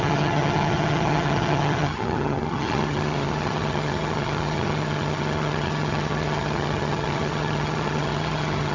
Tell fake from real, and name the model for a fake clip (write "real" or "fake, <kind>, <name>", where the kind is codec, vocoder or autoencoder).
fake, vocoder, HiFi-GAN